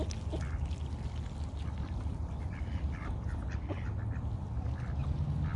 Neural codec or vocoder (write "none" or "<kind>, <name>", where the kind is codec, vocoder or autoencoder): none